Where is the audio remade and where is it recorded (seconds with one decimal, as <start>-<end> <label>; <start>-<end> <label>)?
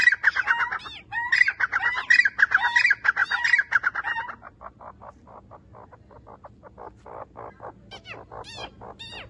0.0-9.3 recorded